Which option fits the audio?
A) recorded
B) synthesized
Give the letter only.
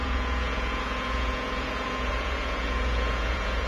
B